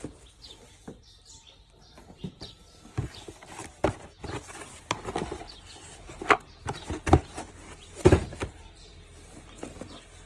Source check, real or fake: fake